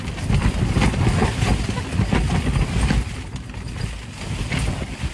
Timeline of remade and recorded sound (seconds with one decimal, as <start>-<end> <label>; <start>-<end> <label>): 0.0-5.1 recorded